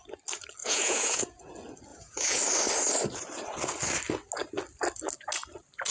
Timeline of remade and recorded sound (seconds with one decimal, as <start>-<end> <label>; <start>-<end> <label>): 0.0-0.6 recorded; 0.6-1.4 remade; 1.4-1.9 recorded; 1.9-2.4 remade; 2.4-5.9 recorded